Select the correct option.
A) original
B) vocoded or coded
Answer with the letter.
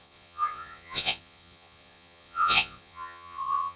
B